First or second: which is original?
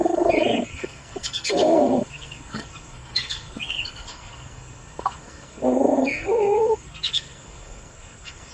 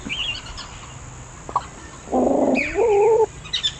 second